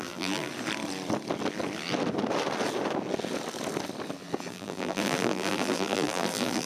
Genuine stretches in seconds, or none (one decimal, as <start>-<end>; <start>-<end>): 0.5-4.5